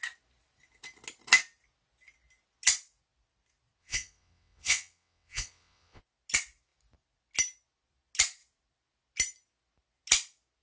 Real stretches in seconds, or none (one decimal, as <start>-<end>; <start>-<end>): 0.0-3.8; 6.0-10.6